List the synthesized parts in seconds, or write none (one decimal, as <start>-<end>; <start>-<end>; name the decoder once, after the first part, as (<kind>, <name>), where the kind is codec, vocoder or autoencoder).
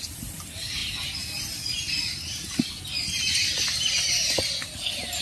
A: none